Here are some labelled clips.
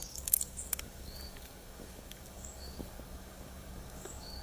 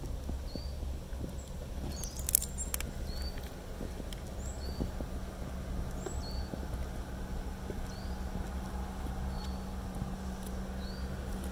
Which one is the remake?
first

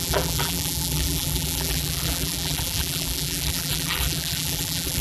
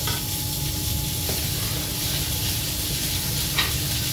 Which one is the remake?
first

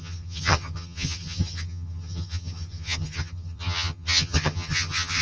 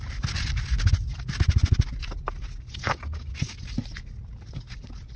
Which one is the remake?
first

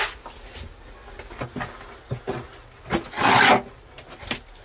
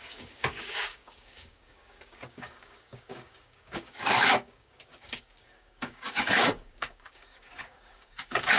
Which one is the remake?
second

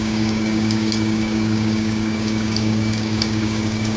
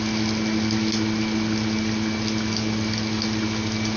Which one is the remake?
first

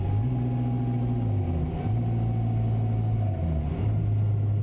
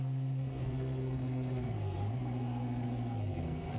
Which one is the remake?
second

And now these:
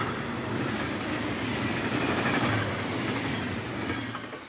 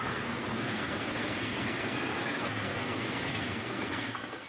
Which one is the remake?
second